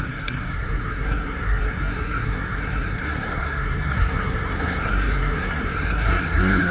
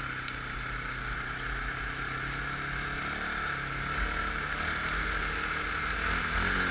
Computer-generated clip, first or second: first